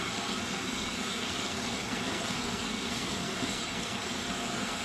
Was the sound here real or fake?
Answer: fake